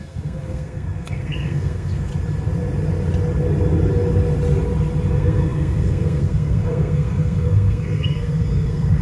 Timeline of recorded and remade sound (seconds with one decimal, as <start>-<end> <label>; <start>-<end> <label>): 0.0-2.1 remade; 2.1-5.1 recorded; 5.1-9.0 remade